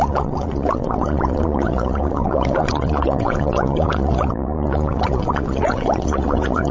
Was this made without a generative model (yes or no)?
no